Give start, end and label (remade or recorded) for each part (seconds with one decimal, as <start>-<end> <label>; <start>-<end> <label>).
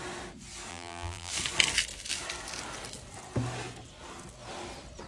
0.0-0.7 recorded; 0.7-1.3 remade; 1.3-5.1 recorded